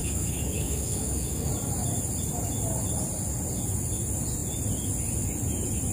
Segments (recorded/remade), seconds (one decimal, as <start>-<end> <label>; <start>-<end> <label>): 0.0-1.5 remade; 1.5-5.9 recorded